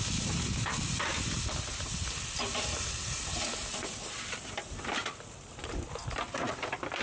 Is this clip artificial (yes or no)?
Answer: yes